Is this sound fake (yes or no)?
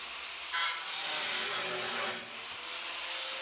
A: no